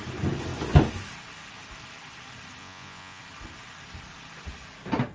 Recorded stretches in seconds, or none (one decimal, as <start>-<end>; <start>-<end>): 0.0-2.6; 3.2-5.1